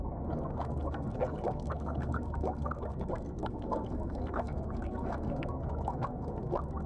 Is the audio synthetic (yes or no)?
yes